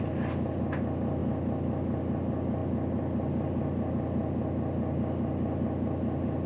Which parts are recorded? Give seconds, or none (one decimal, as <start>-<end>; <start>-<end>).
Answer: 0.0-6.5